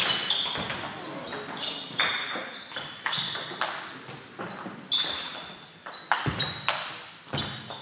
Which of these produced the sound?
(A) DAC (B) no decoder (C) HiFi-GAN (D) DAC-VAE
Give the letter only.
B